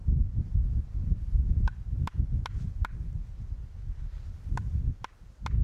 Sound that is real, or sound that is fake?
real